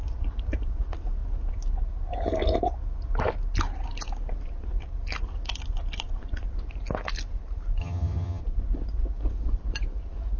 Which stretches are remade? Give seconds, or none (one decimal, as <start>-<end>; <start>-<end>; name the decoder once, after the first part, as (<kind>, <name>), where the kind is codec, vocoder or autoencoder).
7.8-8.4 (vocoder, HiFi-GAN)